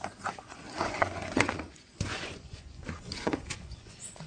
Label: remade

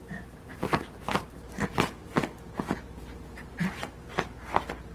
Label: recorded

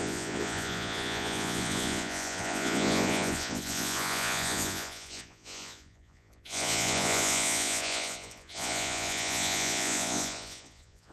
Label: remade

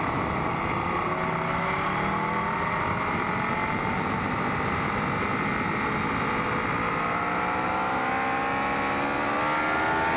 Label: recorded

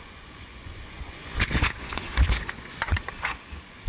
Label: remade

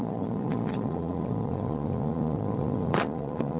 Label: remade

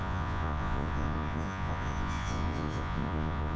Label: remade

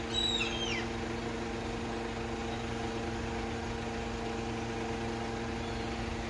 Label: recorded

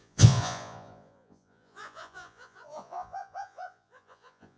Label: remade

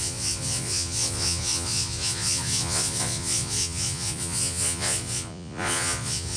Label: remade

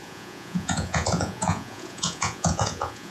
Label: remade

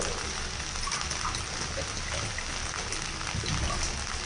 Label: recorded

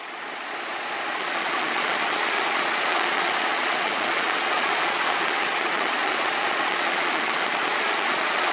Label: remade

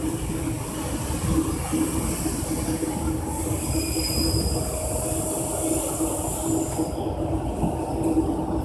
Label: recorded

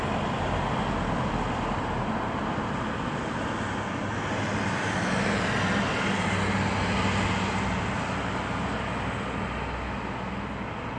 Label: recorded